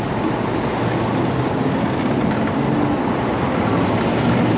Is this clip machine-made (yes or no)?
no